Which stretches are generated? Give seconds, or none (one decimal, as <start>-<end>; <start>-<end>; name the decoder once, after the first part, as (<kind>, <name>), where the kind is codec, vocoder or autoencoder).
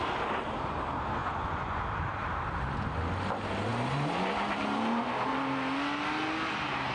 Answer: 1.2-1.8 (vocoder, Vocos)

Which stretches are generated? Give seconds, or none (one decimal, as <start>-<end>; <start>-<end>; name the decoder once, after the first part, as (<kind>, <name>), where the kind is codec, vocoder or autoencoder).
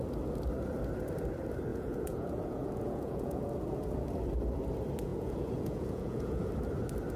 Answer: 1.7-3.5 (vocoder, Vocos); 5.1-6.5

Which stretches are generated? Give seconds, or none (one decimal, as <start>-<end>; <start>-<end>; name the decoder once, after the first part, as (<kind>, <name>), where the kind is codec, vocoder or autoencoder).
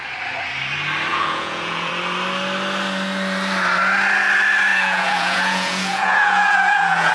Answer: 1.1-1.9 (vocoder, Vocos); 4.7-7.1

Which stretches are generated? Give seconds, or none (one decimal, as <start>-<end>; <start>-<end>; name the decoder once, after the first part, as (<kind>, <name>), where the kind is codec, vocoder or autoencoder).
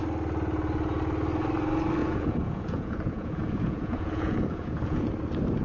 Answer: 2.0-5.1 (vocoder, Vocos)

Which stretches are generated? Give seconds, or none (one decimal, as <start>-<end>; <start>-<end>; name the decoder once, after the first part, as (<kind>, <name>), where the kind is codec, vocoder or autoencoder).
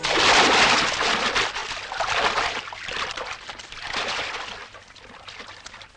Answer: none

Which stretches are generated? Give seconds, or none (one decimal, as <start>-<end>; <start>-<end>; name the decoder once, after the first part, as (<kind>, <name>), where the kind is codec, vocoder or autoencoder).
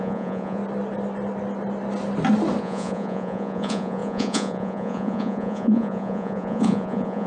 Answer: 0.0-0.6 (vocoder, Vocos); 2.6-7.3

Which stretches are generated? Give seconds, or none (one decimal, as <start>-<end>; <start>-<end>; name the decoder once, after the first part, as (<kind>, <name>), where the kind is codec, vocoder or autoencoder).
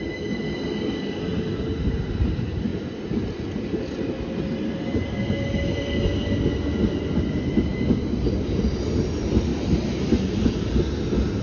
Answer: none